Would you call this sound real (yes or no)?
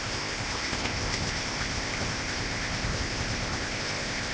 no